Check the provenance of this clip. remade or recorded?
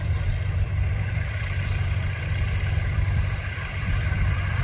remade